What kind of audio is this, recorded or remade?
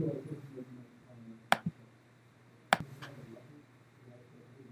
recorded